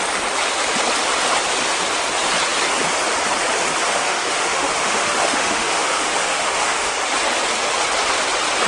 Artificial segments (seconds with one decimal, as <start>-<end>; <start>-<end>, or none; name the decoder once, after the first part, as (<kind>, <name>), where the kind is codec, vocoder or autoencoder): 3.9-6.9 (autoencoder, DAC-VAE)